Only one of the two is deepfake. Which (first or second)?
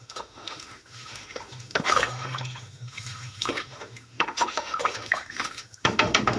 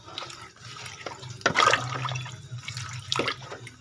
first